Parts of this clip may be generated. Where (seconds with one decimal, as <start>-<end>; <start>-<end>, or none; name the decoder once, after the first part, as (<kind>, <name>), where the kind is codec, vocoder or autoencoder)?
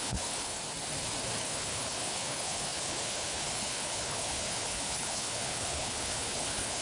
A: 0.0-0.6 (codec, HILCodec); 1.4-6.8